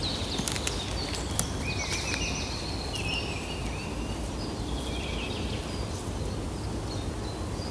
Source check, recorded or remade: recorded